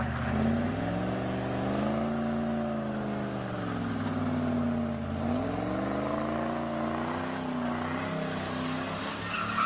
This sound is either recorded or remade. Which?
recorded